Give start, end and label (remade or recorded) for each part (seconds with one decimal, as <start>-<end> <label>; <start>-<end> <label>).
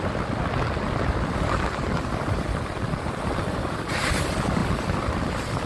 0.0-5.7 recorded